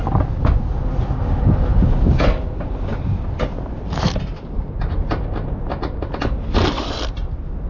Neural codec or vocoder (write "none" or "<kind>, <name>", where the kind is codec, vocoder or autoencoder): none